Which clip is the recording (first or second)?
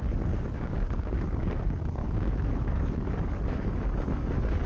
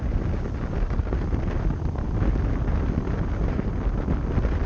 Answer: second